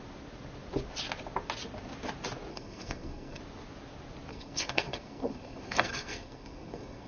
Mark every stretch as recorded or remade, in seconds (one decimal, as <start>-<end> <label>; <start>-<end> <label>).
0.0-2.5 recorded; 2.5-3.4 remade; 3.4-4.3 recorded; 4.3-7.1 remade